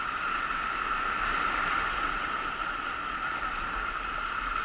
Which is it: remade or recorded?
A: recorded